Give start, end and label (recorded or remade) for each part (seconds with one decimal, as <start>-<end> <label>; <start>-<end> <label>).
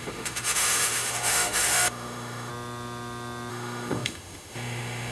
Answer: 0.0-2.5 remade; 2.5-3.5 recorded; 3.5-5.1 remade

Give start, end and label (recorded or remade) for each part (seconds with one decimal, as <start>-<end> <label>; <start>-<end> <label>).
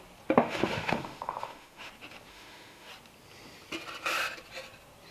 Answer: 0.0-0.4 recorded; 0.4-1.9 remade; 1.9-2.3 recorded; 2.3-2.9 remade; 2.9-5.1 recorded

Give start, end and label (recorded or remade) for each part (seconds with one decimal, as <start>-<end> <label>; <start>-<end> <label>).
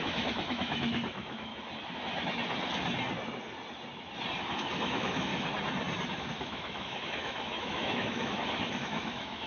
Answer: 0.0-1.5 remade; 1.5-4.4 recorded; 4.4-5.3 remade; 5.3-6.1 recorded; 6.1-9.5 remade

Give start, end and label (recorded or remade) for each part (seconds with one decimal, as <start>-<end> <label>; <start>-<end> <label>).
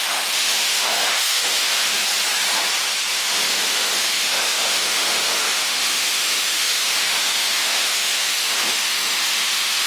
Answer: 0.0-2.0 remade; 2.0-3.1 recorded; 3.1-9.9 remade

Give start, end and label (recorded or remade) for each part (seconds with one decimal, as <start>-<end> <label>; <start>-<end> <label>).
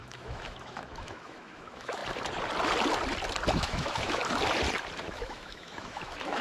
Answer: 0.0-2.0 remade; 2.0-3.5 recorded; 3.5-4.2 remade; 4.2-5.0 recorded; 5.0-6.4 remade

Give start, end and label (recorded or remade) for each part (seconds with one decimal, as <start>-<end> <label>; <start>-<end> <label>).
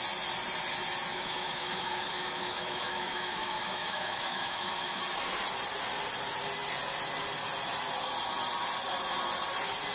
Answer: 0.0-1.1 recorded; 1.1-5.0 remade; 5.0-9.9 recorded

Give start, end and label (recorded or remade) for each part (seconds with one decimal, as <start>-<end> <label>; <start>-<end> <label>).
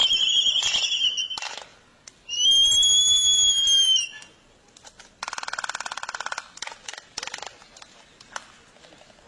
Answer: 0.0-9.3 recorded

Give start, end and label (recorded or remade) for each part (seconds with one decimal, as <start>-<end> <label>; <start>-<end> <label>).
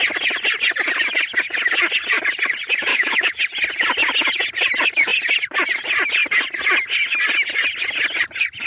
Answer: 0.0-2.9 recorded; 2.9-3.4 remade; 3.4-8.7 recorded